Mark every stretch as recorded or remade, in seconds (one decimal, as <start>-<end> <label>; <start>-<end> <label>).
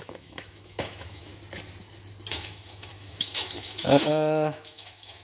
0.0-1.3 remade; 1.3-2.3 recorded; 2.3-5.2 remade